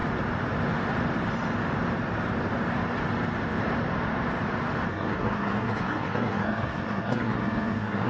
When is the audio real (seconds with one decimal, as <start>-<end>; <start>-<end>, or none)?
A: 0.0-4.9